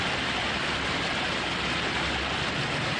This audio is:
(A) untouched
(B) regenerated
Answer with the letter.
A